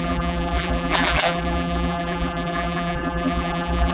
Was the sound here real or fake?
fake